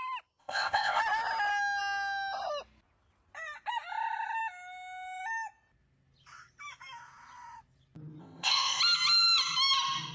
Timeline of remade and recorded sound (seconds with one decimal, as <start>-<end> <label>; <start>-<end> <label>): 0.0-0.4 recorded; 0.4-1.0 remade; 1.0-8.2 recorded; 8.2-8.8 remade; 8.8-10.1 recorded